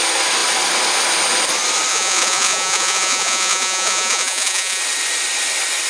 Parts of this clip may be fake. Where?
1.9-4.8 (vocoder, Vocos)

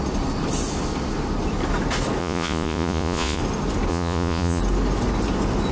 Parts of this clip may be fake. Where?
2.2-3.4 (vocoder, Vocos); 3.9-4.6

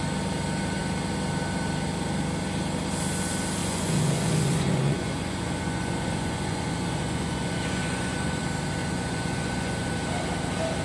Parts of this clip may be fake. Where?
3.6-8.4 (vocoder, Vocos); 8.8-9.9

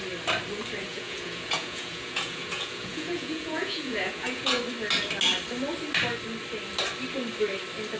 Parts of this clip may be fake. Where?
0.9-4.6 (vocoder, Vocos)

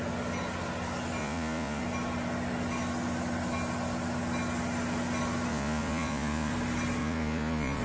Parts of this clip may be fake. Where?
1.2-1.8 (vocoder, Vocos); 5.5-6.5; 7.0-7.8

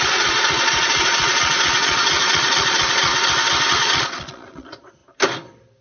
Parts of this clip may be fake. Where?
0.0-3.1 (vocoder, Vocos); 3.7-5.0

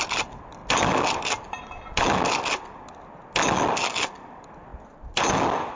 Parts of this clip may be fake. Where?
none

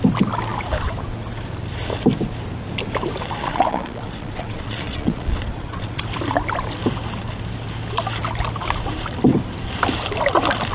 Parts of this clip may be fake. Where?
3.4-6.0 (vocoder, Vocos)